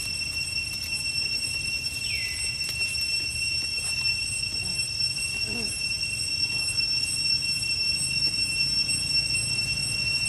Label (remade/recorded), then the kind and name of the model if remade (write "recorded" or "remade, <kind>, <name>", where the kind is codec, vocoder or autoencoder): recorded